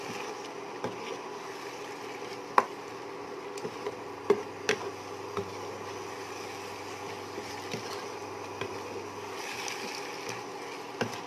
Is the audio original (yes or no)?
yes